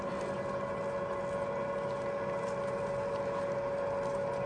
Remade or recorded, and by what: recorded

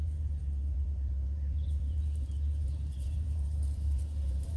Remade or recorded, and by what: remade, vocoder, BigVGAN v2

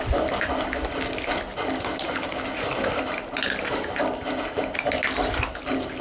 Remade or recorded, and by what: recorded